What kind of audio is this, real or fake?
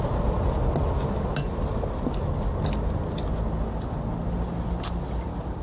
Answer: real